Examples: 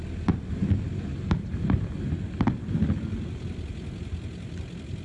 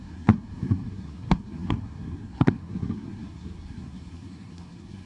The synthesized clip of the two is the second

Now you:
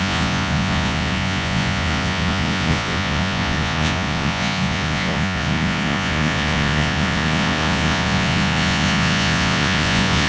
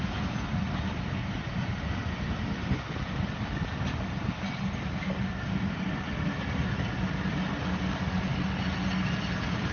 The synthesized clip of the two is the first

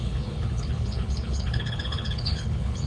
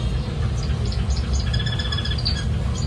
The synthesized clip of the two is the first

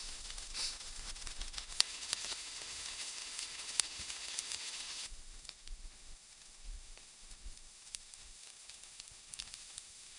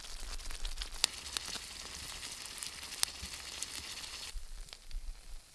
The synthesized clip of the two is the first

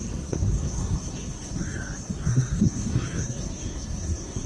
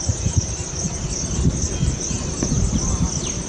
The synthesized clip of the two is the first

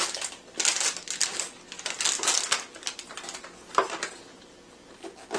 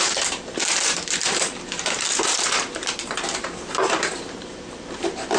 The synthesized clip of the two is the second